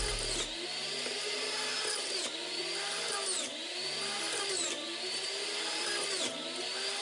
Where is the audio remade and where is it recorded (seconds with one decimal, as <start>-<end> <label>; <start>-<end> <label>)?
0.0-7.0 recorded